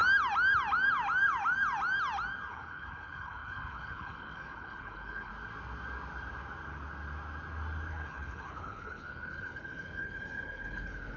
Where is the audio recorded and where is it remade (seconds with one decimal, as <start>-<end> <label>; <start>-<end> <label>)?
0.0-2.5 recorded; 2.5-5.3 remade; 5.3-7.9 recorded; 7.9-11.2 remade